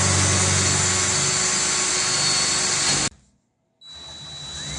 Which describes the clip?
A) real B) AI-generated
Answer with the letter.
A